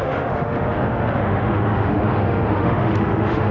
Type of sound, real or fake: fake